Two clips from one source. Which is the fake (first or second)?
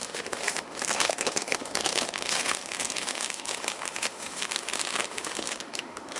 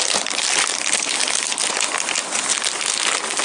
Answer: first